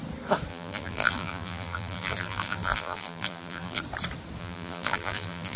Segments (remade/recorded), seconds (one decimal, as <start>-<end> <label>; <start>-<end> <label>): 0.0-0.5 recorded; 0.5-3.8 remade; 3.8-4.4 recorded; 4.4-5.6 remade